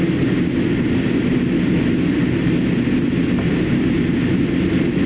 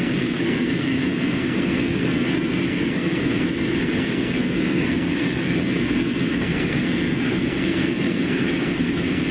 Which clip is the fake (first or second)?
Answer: second